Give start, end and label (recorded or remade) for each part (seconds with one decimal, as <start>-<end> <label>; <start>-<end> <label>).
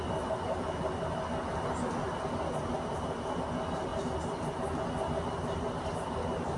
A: 0.0-6.6 recorded